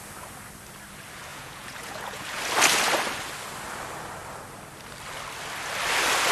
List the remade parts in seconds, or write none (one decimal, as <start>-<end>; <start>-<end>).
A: 1.3-2.4